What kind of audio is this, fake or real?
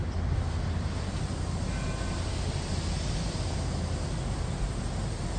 real